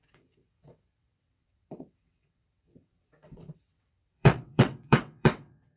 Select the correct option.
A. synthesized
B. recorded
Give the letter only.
A